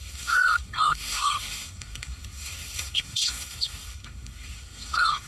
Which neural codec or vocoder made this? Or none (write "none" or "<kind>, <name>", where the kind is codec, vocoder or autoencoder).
codec, SNAC